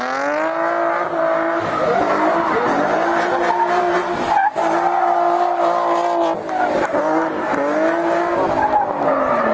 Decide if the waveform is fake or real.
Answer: real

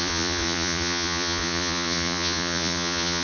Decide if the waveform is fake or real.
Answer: fake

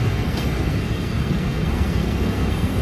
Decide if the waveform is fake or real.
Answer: fake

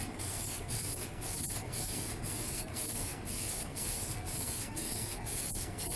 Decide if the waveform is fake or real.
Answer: fake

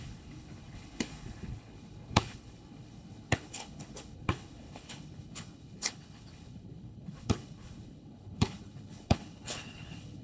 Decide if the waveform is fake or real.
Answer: fake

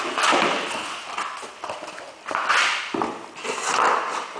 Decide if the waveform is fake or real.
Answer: real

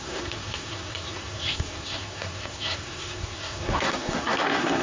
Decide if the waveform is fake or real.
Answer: fake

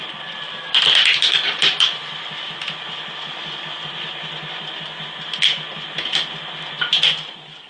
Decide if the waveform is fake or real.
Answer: real